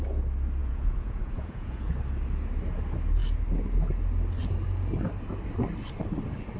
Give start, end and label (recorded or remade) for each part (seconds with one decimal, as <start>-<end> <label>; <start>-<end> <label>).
0.0-0.6 recorded; 0.6-1.9 remade; 1.9-6.6 recorded